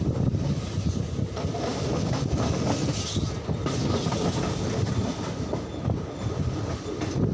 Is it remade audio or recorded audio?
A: recorded